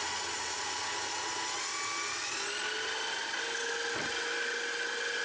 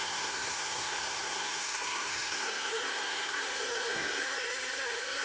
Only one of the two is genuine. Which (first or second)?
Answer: first